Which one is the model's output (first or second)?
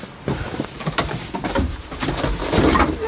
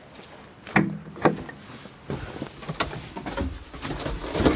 first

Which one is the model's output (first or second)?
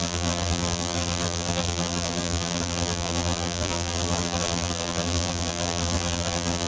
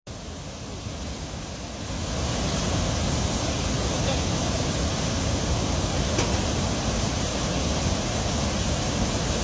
first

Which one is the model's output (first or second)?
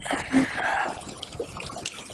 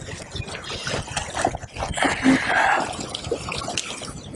first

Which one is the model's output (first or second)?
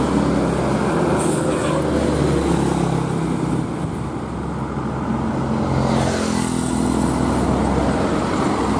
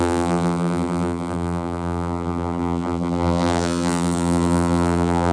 second